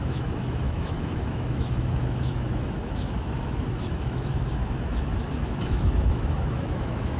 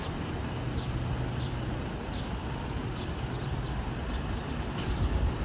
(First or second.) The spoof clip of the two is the first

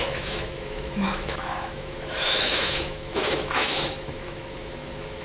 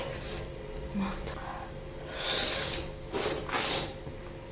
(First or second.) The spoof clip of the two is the first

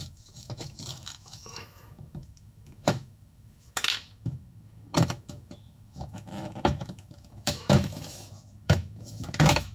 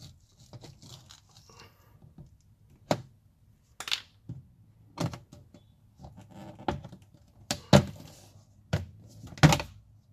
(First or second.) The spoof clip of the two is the first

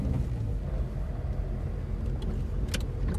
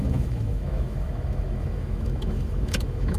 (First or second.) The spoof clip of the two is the second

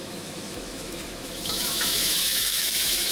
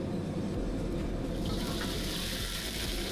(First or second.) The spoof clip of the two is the first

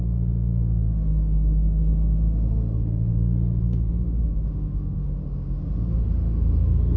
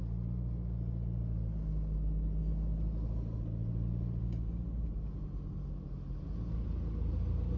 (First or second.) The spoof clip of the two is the first